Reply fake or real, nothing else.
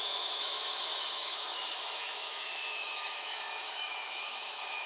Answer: fake